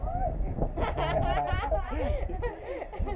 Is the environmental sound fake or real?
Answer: real